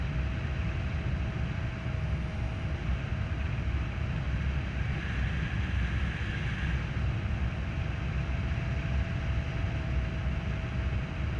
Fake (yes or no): no